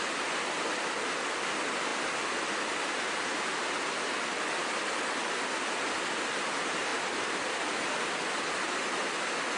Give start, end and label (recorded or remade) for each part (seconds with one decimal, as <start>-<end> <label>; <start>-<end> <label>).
0.0-9.6 recorded